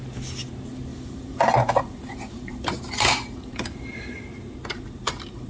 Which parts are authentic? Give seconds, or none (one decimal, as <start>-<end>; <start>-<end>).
0.0-0.9; 4.2-4.7